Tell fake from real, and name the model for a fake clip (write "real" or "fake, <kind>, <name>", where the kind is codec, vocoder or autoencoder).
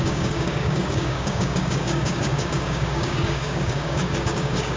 fake, codec, DAC